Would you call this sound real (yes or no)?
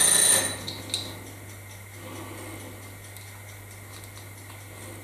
yes